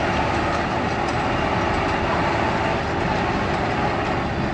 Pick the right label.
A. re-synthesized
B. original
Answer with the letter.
B